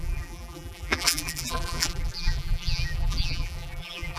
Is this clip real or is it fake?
fake